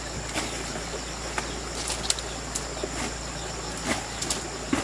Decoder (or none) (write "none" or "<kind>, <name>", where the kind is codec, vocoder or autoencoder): none